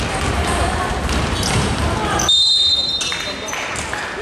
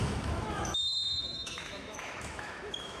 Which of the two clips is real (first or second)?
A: first